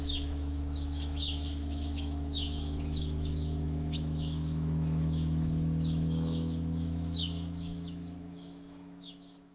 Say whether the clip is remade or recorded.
remade